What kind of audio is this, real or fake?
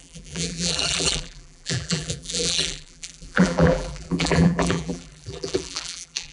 fake